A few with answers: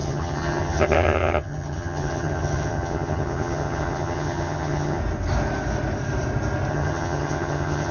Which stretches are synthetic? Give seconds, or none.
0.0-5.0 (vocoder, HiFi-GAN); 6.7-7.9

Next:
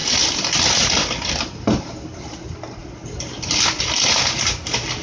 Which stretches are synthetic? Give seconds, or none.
none

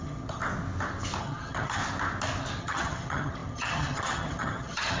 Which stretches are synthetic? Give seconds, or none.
0.0-0.4 (vocoder, HiFi-GAN); 1.2-1.8; 2.6-5.0

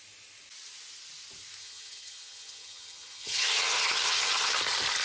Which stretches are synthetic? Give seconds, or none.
1.6-4.6 (vocoder, HiFi-GAN)

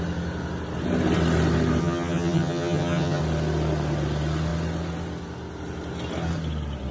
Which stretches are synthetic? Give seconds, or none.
1.8-3.2 (vocoder, HiFi-GAN)

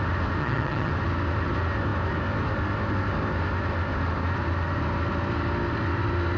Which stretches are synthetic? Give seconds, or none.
0.4-0.9 (vocoder, HiFi-GAN)

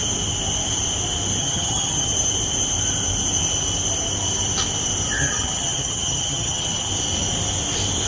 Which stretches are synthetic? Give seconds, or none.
1.4-2.1 (vocoder, HiFi-GAN); 5.2-6.9

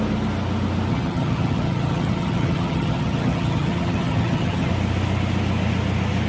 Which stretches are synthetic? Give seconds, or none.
0.9-4.7 (vocoder, HiFi-GAN)